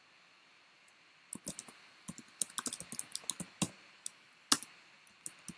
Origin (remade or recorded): recorded